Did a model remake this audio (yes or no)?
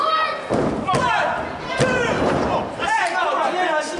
no